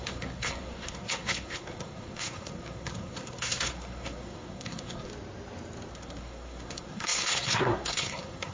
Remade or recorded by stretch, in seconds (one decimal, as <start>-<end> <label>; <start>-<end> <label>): 0.0-5.1 remade; 5.1-5.9 recorded; 5.9-8.5 remade